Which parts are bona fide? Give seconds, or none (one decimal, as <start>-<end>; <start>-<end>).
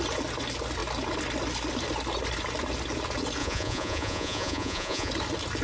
0.0-3.4; 5.1-5.6